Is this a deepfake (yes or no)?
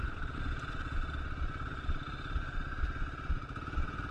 no